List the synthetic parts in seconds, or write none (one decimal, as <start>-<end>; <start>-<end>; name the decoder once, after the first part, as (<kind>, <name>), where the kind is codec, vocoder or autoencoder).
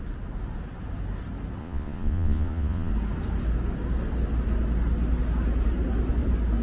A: 1.6-2.9 (vocoder, Vocos)